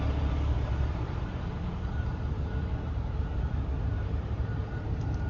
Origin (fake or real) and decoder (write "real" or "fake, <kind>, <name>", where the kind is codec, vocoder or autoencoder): fake, vocoder, BigVGAN v2